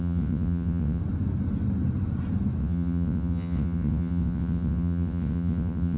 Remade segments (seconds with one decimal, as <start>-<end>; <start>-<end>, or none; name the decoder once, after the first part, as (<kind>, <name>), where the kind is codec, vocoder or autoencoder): 0.0-1.0 (vocoder, WaveNeXt); 2.6-6.0